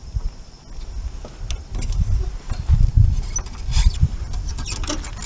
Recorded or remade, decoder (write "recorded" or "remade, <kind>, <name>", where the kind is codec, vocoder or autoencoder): recorded